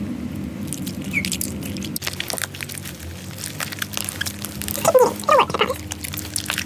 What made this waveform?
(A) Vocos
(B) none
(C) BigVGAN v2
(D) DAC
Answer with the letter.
B